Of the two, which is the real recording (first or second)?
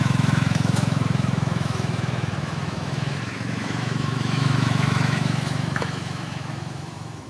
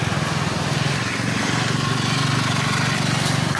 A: second